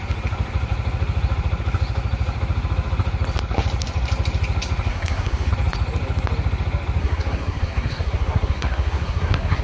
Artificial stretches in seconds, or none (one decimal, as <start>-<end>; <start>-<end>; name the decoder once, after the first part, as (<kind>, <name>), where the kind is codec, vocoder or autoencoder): 4.9-5.5 (codec, SNAC); 7.0-9.6